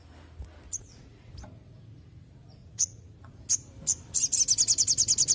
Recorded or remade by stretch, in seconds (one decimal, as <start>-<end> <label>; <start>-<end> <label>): 0.0-0.7 recorded; 0.7-1.3 remade; 1.3-2.6 recorded; 2.6-3.4 remade; 3.4-5.3 recorded